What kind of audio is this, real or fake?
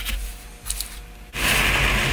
real